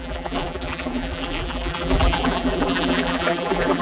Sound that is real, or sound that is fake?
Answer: fake